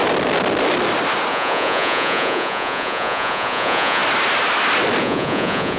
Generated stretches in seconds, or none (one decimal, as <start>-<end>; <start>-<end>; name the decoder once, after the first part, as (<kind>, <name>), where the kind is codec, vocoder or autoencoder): 1.3-4.0 (vocoder, Vocos); 5.0-5.8